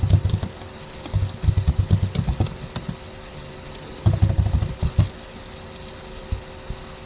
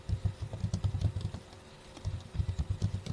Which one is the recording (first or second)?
first